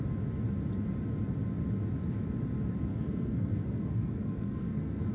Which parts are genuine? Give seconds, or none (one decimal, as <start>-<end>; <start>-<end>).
0.0-2.9